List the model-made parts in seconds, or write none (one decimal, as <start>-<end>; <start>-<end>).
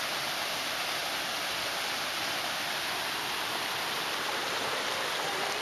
none